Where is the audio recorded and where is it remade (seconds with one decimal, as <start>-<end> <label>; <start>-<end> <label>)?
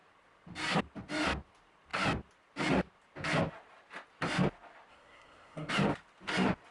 0.0-4.9 recorded; 4.9-5.7 remade; 5.7-6.7 recorded